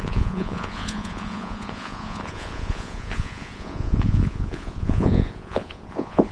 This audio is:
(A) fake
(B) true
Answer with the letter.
A